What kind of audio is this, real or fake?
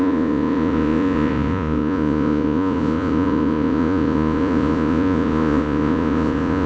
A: fake